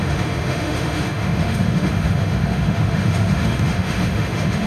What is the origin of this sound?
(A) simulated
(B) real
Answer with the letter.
A